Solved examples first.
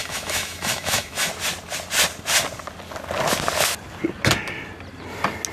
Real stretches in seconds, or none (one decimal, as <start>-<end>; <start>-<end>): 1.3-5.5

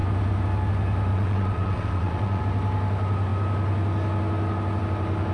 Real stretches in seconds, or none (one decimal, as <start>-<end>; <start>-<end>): 0.0-1.1; 2.4-5.3

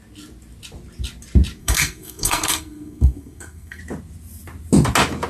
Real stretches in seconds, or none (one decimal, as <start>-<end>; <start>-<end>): 0.0-1.6; 3.8-5.3

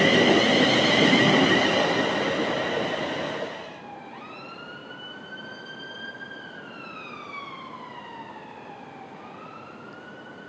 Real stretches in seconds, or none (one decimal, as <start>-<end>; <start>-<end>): 0.0-10.5

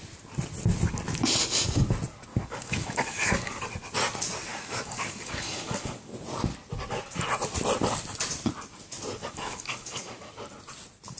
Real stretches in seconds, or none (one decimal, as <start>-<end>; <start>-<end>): 0.0-2.3; 3.6-4.5; 6.1-9.2; 10.3-11.2

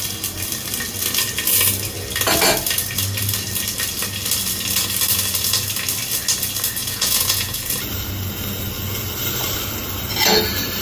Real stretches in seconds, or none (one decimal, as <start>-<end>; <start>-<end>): 0.0-6.8; 7.7-10.8